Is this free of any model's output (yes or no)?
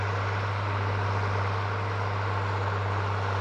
yes